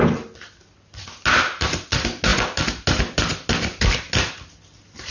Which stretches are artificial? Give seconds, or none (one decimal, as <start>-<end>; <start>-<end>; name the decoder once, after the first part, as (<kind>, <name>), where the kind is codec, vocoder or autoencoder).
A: none